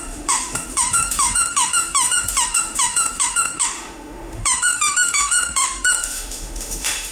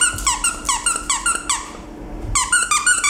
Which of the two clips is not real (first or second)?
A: first